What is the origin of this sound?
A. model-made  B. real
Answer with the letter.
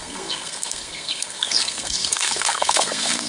A